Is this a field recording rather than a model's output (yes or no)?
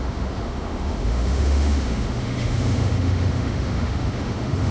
no